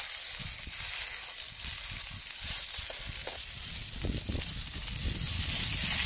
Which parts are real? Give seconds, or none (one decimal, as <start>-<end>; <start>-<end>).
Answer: 0.0-3.2; 4.0-6.1

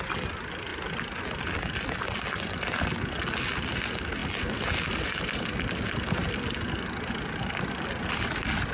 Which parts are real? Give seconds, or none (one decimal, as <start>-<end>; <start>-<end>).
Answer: 0.0-8.7